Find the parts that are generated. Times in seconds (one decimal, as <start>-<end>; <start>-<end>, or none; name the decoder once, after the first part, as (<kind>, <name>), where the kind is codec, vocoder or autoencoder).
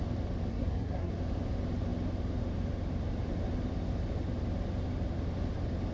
0.5-1.1 (codec, SNAC)